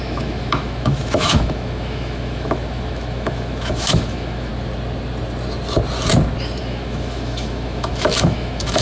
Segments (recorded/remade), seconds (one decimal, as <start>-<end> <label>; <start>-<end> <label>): 0.0-4.5 remade; 4.5-6.6 recorded; 6.6-8.8 remade